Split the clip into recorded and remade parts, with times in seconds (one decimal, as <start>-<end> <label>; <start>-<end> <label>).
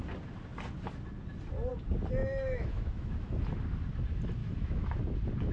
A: 0.0-2.2 recorded; 2.2-3.4 remade; 3.4-4.4 recorded; 4.4-5.0 remade; 5.0-5.5 recorded